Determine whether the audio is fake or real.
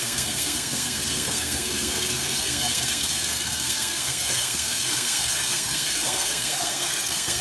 fake